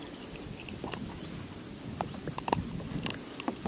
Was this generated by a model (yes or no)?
no